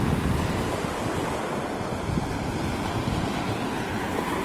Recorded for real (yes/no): yes